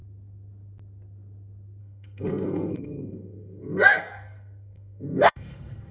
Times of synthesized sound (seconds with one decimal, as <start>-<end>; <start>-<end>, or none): 1.8-5.9